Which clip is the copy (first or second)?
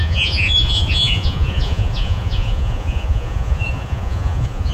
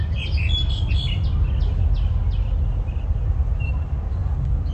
first